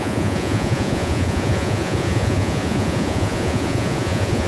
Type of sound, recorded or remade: remade